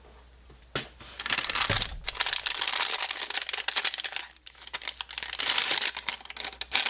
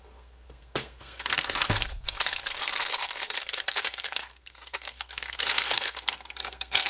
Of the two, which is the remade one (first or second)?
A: second